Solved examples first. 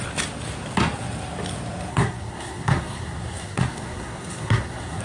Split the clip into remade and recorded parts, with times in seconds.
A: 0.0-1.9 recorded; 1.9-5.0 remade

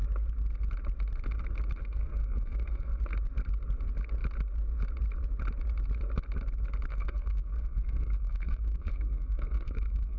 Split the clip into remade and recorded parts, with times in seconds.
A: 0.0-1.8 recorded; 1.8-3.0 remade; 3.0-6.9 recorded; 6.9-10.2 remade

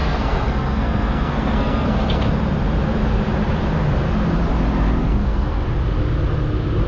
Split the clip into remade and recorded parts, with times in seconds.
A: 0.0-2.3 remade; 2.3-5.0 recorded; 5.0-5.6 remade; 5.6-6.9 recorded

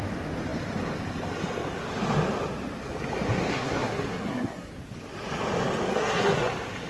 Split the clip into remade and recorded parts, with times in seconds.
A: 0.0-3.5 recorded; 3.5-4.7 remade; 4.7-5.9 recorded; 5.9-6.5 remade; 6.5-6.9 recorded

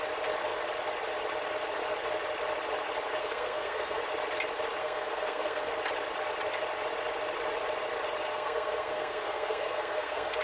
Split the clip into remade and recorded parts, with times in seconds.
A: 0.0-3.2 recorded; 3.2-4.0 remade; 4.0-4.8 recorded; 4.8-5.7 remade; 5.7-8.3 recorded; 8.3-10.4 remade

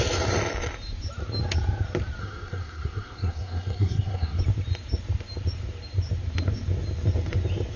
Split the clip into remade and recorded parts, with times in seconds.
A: 0.0-2.2 recorded; 2.2-4.4 remade; 4.4-7.8 recorded